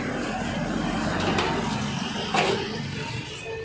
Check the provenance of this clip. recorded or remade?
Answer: recorded